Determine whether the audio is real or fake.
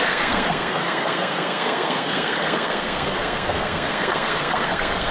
fake